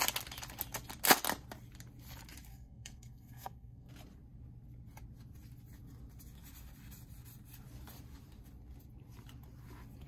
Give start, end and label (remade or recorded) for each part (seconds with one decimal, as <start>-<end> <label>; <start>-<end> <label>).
0.0-2.5 recorded; 2.5-3.9 remade; 3.9-10.1 recorded